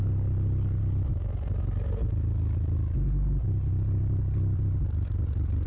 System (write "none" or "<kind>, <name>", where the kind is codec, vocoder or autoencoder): none